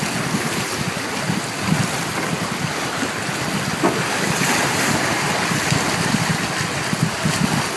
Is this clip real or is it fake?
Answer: real